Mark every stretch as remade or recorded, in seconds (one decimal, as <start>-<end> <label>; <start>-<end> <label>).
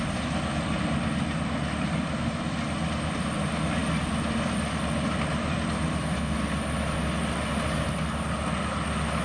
0.0-9.2 recorded